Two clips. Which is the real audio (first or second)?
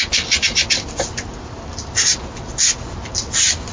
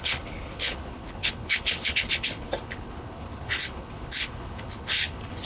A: first